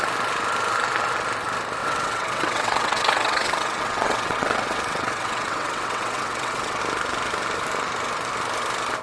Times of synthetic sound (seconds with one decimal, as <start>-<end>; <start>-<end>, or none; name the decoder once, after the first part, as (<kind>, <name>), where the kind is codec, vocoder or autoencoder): 1.8-6.8 (vocoder, WaveNeXt)